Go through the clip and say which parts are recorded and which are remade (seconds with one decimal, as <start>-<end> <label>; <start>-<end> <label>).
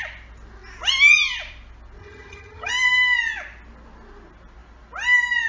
0.0-2.0 recorded; 2.0-2.7 remade; 2.7-5.5 recorded